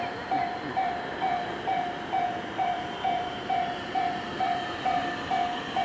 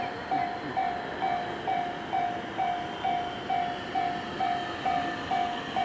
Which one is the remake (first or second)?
first